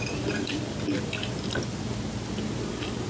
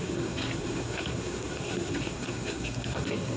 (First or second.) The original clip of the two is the first